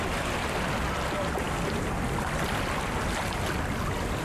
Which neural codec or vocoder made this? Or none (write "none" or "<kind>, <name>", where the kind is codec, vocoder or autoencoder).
none